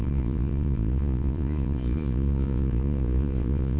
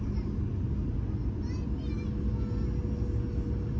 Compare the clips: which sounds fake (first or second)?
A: first